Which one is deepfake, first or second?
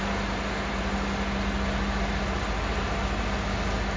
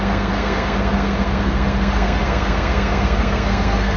second